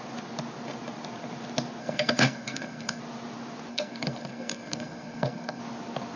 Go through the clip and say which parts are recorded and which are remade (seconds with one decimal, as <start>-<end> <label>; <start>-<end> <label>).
0.0-1.8 recorded; 1.8-3.0 remade; 3.0-3.7 recorded; 3.7-5.6 remade; 5.6-6.2 recorded